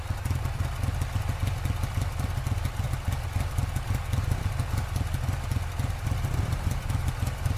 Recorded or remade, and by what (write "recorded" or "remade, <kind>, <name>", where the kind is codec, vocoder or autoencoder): recorded